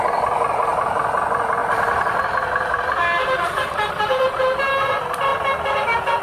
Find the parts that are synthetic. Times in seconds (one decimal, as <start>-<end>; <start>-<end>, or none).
1.6-4.4